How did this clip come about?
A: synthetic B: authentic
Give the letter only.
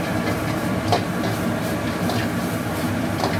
A